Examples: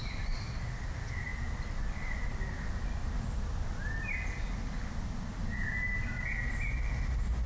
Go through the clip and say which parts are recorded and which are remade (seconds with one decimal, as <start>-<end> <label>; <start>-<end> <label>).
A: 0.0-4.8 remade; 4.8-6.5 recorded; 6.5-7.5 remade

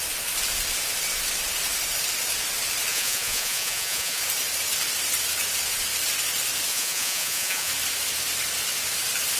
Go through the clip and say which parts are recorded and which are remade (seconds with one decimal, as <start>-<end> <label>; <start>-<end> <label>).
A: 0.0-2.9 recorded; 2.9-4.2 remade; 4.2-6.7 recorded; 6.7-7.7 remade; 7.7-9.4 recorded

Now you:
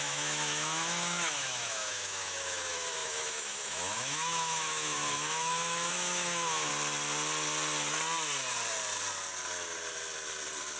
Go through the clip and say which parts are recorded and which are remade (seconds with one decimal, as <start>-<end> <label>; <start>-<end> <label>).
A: 0.0-6.7 remade; 6.7-10.8 recorded

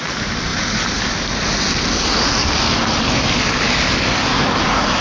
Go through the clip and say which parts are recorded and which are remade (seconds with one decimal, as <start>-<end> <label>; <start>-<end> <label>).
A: 0.0-5.0 recorded